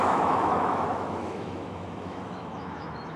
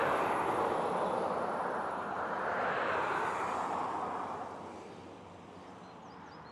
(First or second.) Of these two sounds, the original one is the second